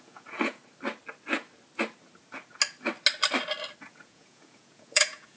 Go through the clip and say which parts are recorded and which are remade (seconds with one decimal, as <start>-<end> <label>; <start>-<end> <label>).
0.0-0.6 remade; 0.6-3.8 recorded; 3.8-5.4 remade